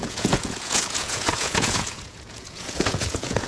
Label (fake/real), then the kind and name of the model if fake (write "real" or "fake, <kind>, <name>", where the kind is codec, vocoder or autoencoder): fake, vocoder, Vocos